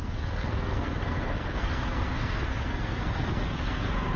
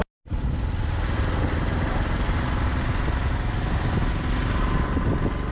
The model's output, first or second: first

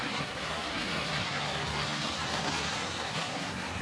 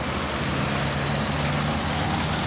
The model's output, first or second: first